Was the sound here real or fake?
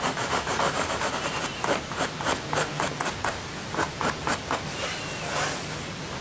real